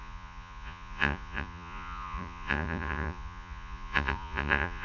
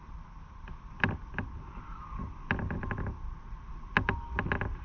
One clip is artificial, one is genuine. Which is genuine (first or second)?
second